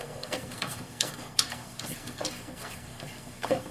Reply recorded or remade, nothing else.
remade